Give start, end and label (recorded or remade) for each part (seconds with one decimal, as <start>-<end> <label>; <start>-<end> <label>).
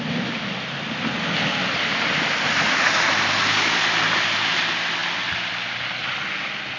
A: 0.0-6.8 recorded